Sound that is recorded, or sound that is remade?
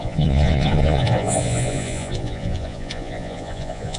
remade